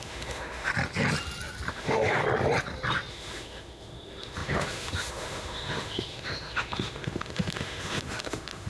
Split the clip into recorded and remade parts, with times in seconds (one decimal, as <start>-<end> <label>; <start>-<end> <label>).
0.0-0.7 remade; 0.7-1.7 recorded; 1.7-2.2 remade; 2.2-3.1 recorded; 3.1-8.7 remade